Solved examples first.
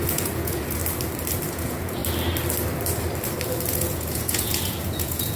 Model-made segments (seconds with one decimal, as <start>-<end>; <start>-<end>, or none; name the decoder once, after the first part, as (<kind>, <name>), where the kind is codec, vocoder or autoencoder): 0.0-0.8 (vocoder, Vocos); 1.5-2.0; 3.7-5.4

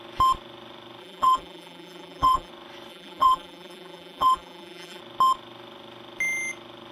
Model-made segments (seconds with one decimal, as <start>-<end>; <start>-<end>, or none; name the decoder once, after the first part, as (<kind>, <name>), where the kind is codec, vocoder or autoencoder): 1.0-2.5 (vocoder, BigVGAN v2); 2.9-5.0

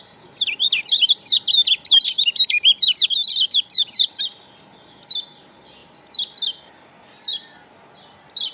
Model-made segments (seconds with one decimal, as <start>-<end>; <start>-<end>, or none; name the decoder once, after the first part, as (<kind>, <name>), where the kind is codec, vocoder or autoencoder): none

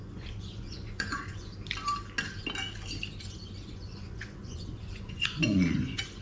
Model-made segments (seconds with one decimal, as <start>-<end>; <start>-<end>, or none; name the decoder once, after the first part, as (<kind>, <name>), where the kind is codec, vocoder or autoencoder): 0.0-1.5 (vocoder, Vocos); 3.2-6.2